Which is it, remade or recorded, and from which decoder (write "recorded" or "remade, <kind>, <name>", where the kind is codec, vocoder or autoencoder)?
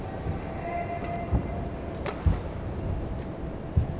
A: recorded